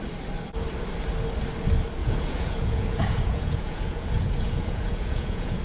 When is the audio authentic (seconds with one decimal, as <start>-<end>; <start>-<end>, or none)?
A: 0.0-2.0